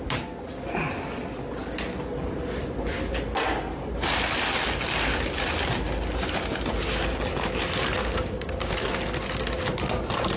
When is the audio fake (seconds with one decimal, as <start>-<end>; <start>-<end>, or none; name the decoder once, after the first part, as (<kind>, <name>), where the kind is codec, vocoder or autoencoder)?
8.0-8.7 (codec, DAC)